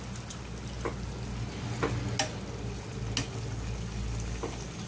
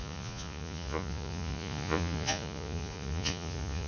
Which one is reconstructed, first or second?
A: second